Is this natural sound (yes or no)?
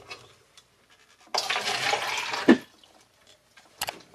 yes